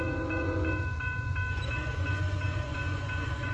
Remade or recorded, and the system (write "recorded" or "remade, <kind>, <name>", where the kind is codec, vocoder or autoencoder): remade, vocoder, Vocos